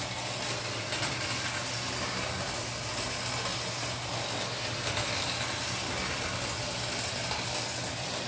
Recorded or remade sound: recorded